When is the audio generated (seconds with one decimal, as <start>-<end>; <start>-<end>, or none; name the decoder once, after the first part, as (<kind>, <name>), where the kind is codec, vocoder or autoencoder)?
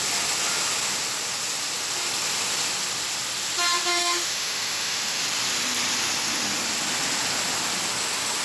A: 3.9-5.2 (autoencoder, DAC-VAE)